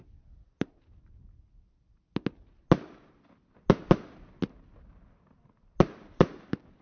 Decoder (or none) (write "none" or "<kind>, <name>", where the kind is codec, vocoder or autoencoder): none